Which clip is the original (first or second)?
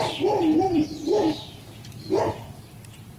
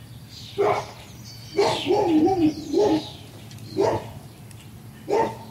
second